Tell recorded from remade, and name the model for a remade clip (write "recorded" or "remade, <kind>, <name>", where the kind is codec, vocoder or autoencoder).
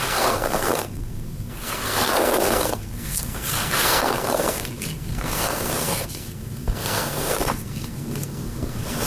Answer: remade, codec, SNAC